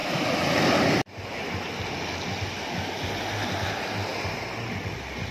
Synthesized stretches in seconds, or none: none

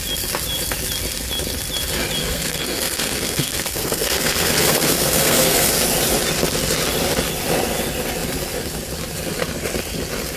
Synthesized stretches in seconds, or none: 2.2-5.7 (codec, SNAC)

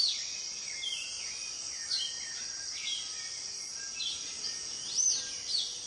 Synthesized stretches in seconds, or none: none

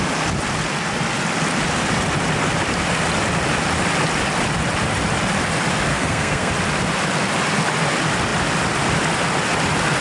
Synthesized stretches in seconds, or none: 5.9-6.5 (codec, SNAC)

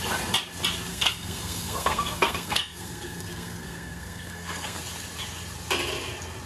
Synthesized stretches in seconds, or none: 0.9-4.8 (codec, SNAC)